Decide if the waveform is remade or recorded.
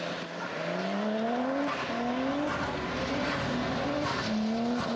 recorded